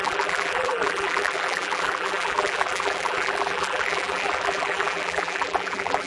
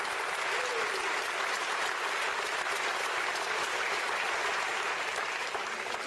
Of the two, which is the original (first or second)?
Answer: second